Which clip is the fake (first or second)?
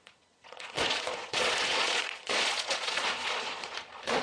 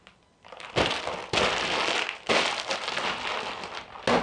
first